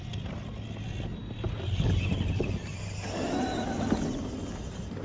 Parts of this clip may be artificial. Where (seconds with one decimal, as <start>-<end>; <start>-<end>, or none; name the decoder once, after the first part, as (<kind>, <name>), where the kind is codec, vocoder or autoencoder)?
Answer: none